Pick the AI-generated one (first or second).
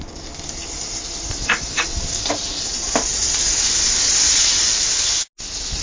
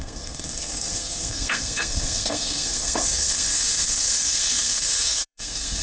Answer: second